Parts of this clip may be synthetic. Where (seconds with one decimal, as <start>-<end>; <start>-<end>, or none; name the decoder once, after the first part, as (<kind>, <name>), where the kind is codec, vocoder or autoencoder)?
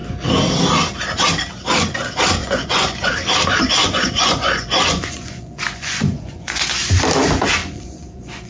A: 2.4-3.1 (vocoder, Vocos); 3.8-6.7; 7.6-8.5